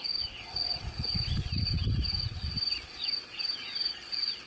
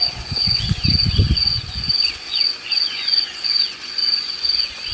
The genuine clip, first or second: first